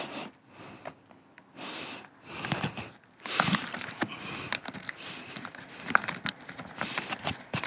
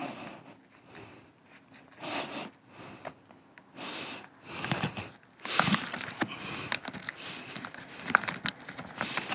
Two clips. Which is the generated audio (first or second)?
first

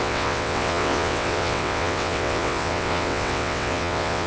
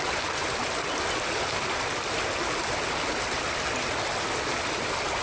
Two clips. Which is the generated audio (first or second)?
first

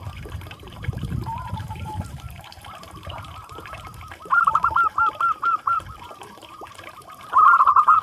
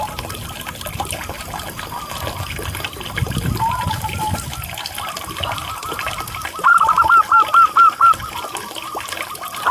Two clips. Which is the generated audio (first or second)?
first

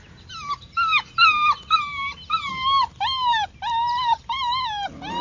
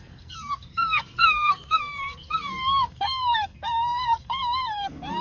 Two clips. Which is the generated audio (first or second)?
second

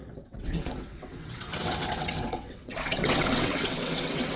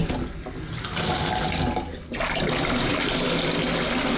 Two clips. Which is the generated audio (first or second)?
first